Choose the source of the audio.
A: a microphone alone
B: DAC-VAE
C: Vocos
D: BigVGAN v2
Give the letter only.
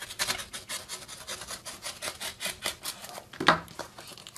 A